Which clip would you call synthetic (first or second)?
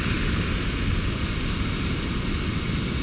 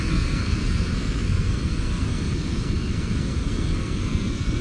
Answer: second